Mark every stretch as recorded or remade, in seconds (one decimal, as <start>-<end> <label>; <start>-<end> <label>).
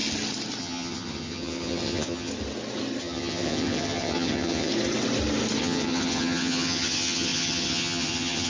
0.0-0.6 recorded; 0.6-2.3 remade; 2.3-3.0 recorded; 3.0-4.7 remade; 4.7-5.6 recorded; 5.6-8.5 remade